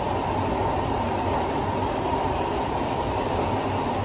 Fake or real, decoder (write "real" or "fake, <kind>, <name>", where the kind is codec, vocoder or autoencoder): real